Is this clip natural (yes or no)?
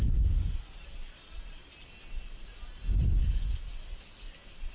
yes